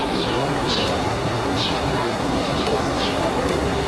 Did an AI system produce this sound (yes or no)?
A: yes